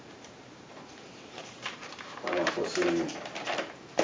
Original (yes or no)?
no